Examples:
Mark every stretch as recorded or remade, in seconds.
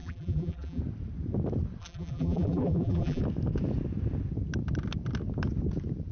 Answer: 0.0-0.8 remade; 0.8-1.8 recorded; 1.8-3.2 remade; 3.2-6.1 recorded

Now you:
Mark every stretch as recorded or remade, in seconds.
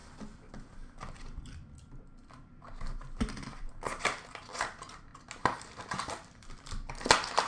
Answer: 0.0-7.5 recorded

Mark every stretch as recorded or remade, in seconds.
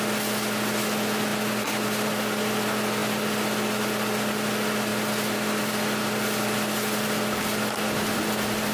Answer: 0.0-1.3 recorded; 1.3-2.5 remade; 2.5-4.9 recorded; 4.9-8.7 remade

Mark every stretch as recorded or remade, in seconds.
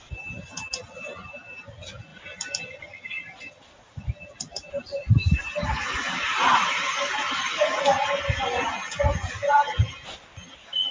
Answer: 0.0-5.0 recorded; 5.0-7.8 remade; 7.8-10.9 recorded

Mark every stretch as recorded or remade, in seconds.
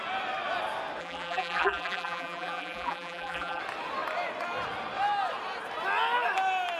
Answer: 0.0-1.0 recorded; 1.0-3.6 remade; 3.6-6.8 recorded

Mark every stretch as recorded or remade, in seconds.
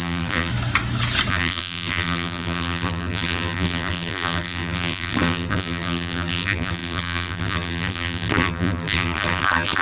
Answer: 0.0-0.5 remade; 0.5-1.3 recorded; 1.3-9.8 remade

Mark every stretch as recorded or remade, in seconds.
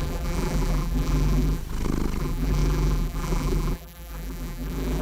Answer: 0.0-1.6 remade; 1.6-2.2 recorded; 2.2-5.0 remade